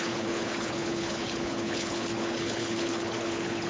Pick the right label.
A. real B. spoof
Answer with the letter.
B